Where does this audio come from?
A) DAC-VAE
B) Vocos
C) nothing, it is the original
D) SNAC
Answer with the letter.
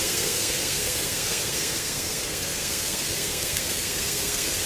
D